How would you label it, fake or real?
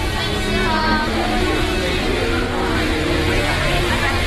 real